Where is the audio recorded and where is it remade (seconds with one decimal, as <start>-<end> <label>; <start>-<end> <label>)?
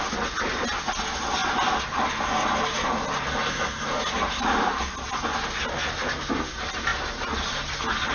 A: 0.0-8.1 recorded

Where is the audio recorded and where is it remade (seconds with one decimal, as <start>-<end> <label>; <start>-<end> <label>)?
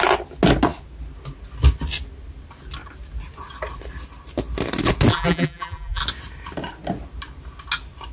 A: 0.0-5.1 recorded; 5.1-6.0 remade; 6.0-8.1 recorded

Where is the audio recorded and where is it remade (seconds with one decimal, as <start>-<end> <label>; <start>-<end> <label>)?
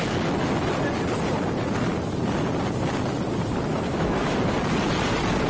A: 0.0-3.7 recorded; 3.7-4.4 remade; 4.4-5.5 recorded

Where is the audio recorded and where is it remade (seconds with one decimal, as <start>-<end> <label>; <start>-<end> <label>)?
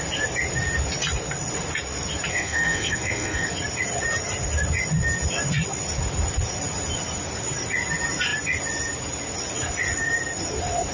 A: 0.0-2.3 recorded; 2.3-3.5 remade; 3.5-10.9 recorded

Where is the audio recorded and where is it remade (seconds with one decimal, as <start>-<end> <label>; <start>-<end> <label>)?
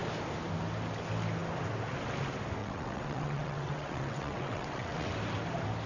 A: 0.0-2.6 recorded; 2.6-5.1 remade; 5.1-5.9 recorded